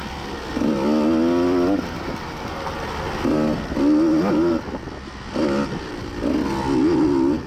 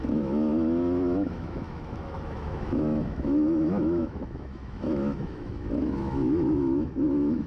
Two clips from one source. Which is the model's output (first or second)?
second